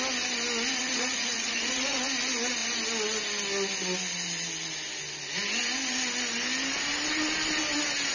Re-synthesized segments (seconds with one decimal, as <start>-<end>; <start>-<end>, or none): 0.8-2.0